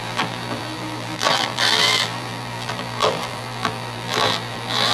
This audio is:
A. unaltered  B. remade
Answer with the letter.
B